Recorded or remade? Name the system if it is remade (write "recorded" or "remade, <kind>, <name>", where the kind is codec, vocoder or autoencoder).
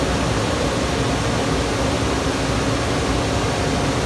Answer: recorded